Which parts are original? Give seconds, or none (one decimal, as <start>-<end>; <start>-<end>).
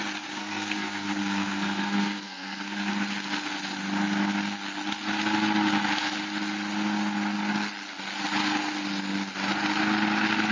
0.0-0.4; 2.9-10.5